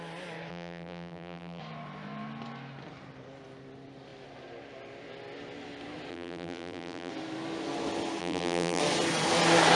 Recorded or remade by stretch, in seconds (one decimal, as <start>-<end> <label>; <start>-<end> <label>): 0.0-0.5 recorded; 0.5-1.6 remade; 1.6-6.1 recorded; 6.1-7.1 remade; 7.1-8.2 recorded; 8.2-8.8 remade; 8.8-9.7 recorded